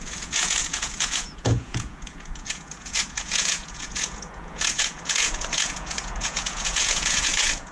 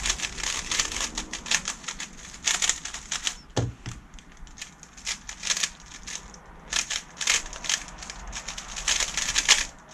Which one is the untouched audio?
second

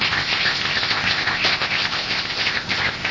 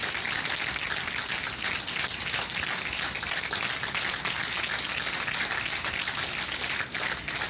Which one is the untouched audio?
second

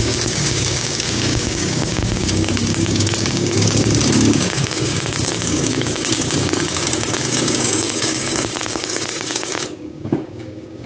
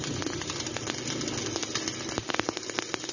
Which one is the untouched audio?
second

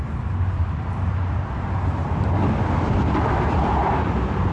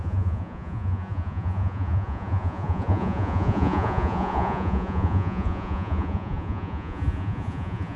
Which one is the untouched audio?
first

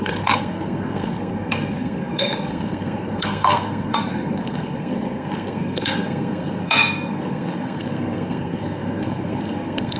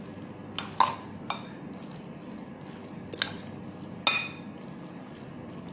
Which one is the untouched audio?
second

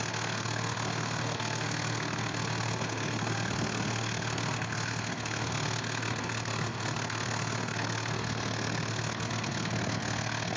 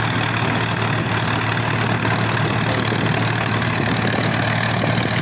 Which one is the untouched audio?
second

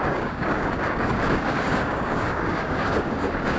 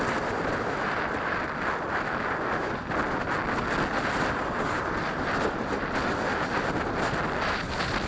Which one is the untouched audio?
second